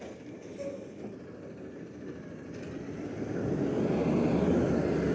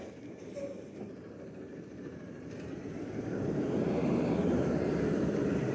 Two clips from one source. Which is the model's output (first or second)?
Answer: second